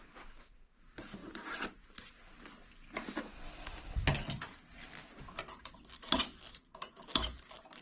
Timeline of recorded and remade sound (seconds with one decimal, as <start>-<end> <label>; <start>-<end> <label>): 0.0-2.2 remade; 2.2-5.6 recorded; 5.6-7.8 remade